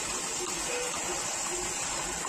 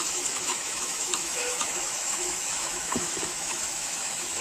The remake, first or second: second